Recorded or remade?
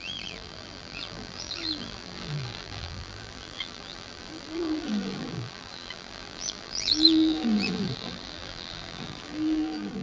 remade